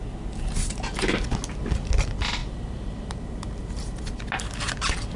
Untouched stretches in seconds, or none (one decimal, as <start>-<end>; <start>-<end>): 0.0-2.4; 4.0-5.2

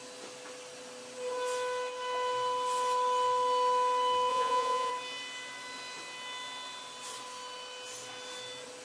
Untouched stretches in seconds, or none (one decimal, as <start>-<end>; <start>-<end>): 0.0-4.3; 4.9-8.8

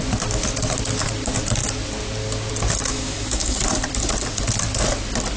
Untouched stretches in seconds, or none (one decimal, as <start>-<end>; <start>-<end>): 0.0-2.9; 3.6-5.4

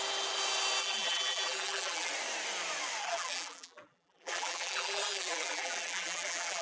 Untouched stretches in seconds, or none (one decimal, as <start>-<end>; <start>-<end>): 0.0-0.8; 2.1-3.0

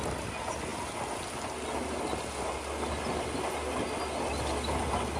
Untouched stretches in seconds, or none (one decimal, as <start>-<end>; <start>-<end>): 0.0-5.2

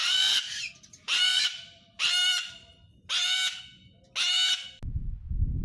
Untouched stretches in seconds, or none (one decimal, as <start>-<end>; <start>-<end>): 2.2-5.6

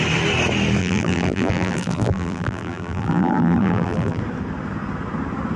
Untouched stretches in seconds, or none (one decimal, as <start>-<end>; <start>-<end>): 0.0-0.8; 4.2-5.6